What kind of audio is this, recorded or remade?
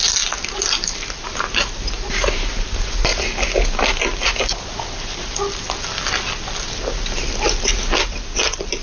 recorded